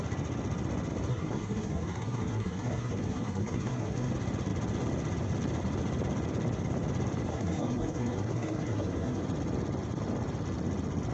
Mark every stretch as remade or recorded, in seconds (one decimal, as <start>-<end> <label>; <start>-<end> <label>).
0.0-1.1 recorded; 1.1-4.1 remade; 4.1-7.3 recorded; 7.3-9.2 remade; 9.2-11.1 recorded